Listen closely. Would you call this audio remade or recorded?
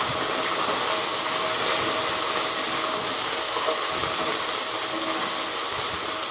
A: recorded